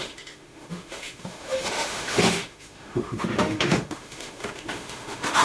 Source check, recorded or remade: remade